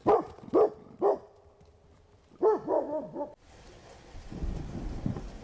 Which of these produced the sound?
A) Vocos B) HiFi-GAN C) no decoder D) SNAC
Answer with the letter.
C